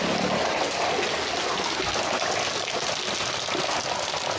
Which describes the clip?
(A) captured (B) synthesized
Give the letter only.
A